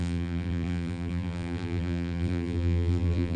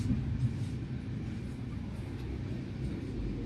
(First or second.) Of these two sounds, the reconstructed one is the first